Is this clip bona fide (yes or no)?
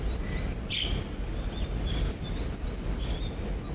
yes